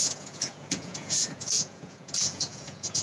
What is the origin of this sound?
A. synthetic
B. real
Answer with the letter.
A